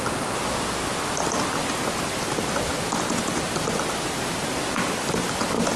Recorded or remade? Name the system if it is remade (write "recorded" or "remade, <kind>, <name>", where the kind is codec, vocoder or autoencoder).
recorded